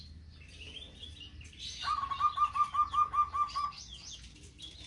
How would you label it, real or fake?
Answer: real